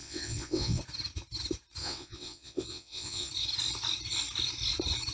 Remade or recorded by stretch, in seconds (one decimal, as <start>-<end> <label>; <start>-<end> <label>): 0.0-0.8 remade; 0.8-1.8 recorded; 1.8-3.3 remade; 3.3-5.1 recorded